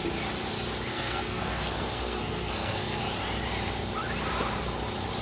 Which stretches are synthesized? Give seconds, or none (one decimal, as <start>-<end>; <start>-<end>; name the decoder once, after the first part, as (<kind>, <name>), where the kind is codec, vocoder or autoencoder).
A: 0.9-3.0 (codec, SNAC)